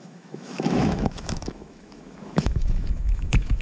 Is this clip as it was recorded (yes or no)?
no